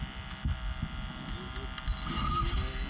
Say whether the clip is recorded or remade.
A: recorded